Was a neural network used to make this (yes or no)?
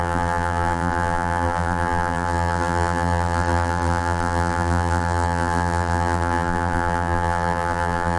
yes